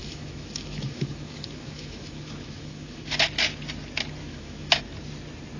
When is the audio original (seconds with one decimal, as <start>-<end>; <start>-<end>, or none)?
3.0-4.2; 4.8-5.6